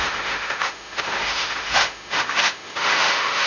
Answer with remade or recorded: remade